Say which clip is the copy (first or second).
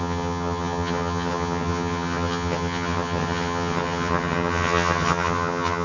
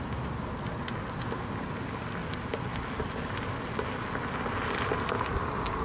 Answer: first